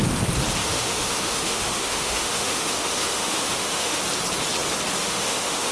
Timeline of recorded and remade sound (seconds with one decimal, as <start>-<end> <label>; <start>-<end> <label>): 0.0-0.6 recorded; 0.6-4.0 remade; 4.0-5.0 recorded; 5.0-5.7 remade